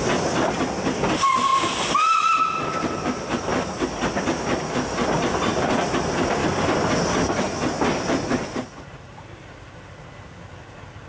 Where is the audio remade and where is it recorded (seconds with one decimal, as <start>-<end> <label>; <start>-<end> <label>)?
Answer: 0.0-3.5 recorded; 3.5-4.0 remade; 4.0-5.5 recorded; 5.5-6.0 remade; 6.0-11.1 recorded